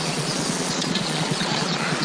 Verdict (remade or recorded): remade